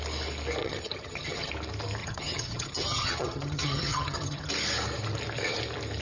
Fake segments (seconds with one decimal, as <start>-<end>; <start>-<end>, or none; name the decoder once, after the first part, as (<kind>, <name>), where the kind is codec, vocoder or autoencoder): 0.6-1.5 (vocoder, HiFi-GAN); 2.0-4.5